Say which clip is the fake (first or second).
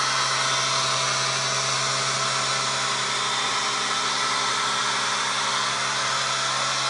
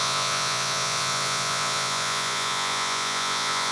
second